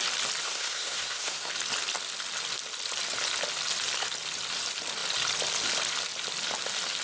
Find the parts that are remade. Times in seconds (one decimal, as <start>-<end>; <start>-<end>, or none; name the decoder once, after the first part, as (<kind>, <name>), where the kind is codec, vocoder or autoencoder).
0.4-1.5 (codec, SNAC)